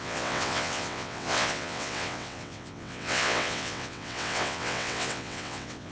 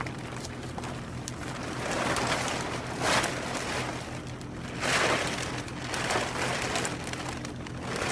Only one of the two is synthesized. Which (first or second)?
first